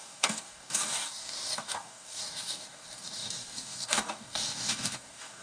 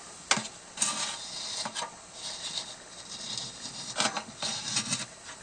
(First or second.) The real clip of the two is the second